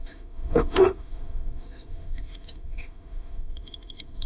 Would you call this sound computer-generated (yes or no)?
yes